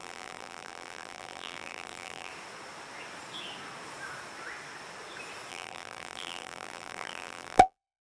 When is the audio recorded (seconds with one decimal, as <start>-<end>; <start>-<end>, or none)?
2.3-5.5